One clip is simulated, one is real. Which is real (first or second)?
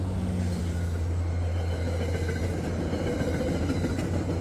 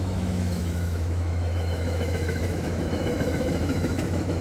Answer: first